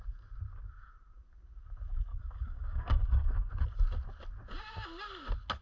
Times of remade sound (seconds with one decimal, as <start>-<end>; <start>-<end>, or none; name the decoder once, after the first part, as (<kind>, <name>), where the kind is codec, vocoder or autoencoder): 2.1-3.5 (codec, DAC)